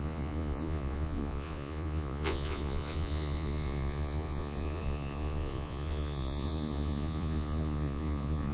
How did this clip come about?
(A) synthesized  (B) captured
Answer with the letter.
A